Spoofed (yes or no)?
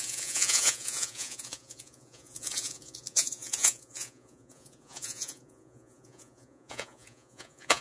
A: yes